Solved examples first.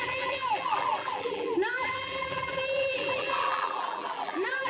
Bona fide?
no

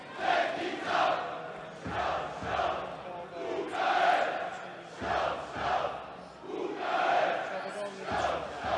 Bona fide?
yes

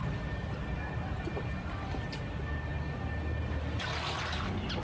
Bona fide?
yes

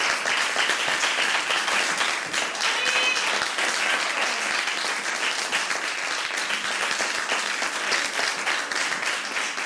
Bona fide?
yes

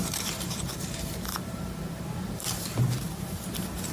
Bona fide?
no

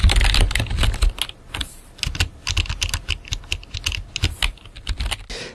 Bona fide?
yes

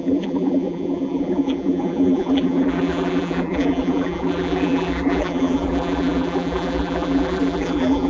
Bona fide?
no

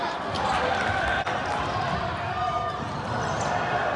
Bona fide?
yes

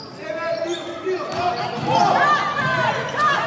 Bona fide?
yes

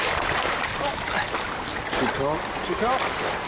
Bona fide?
yes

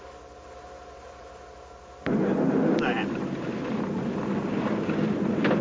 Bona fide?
yes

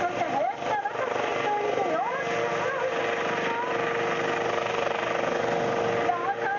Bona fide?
yes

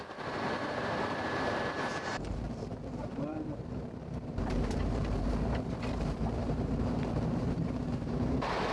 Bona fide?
no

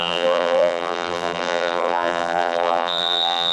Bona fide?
no